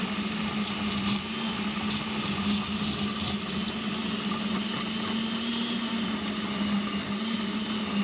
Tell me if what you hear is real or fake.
real